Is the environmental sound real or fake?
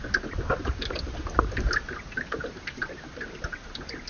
real